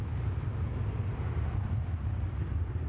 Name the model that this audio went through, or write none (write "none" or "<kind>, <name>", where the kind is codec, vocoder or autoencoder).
none